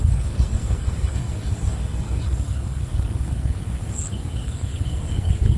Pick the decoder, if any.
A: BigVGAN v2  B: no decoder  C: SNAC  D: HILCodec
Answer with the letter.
C